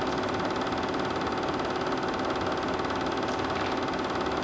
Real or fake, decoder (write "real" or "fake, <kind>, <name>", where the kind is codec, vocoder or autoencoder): real